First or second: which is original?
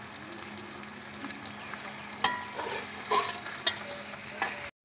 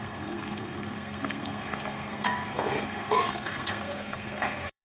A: first